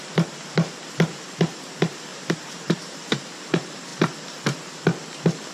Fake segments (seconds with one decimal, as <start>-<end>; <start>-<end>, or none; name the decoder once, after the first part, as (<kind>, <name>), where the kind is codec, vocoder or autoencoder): 2.1-3.0 (vocoder, BigVGAN v2)